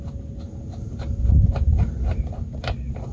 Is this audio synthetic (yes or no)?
no